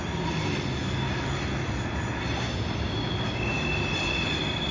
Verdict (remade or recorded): recorded